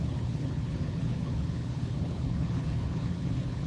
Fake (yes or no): yes